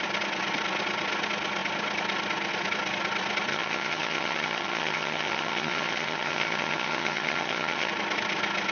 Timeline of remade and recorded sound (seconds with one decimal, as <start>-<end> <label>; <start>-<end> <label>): 0.0-3.5 recorded; 3.5-7.9 remade; 7.9-8.7 recorded